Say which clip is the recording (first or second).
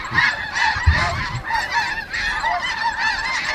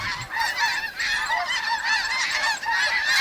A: second